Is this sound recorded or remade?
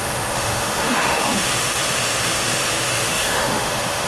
remade